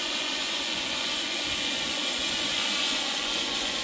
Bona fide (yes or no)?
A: no